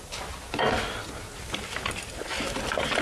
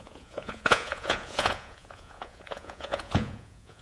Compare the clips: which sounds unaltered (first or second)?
first